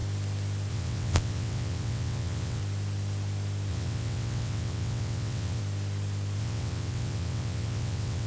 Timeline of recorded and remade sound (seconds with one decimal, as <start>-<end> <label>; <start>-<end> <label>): 0.0-0.7 recorded; 0.7-2.6 remade; 2.6-3.7 recorded; 3.7-5.6 remade; 5.6-6.4 recorded; 6.4-8.3 remade